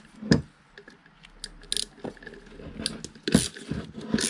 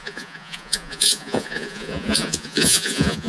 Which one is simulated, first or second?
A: second